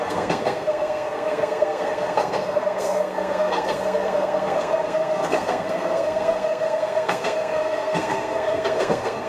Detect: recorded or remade remade